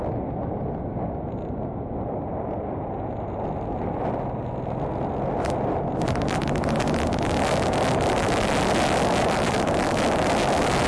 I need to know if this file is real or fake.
real